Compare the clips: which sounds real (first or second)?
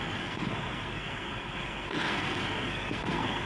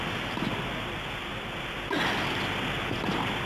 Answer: second